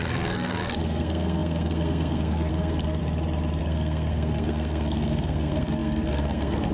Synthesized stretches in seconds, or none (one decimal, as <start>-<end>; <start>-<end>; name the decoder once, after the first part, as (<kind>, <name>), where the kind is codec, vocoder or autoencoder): 0.0-3.0 (codec, SNAC); 3.6-6.7